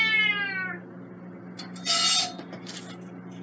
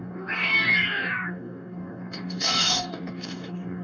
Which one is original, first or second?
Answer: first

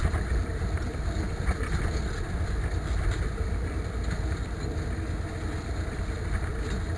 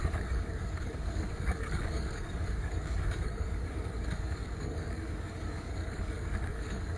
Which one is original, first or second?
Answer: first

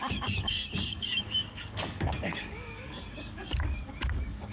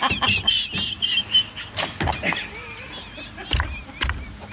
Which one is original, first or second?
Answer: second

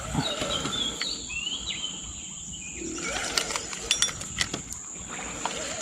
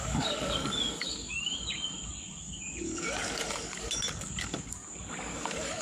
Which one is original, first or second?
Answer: first